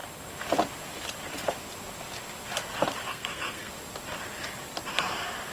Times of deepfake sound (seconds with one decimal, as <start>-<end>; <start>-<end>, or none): 3.1-3.7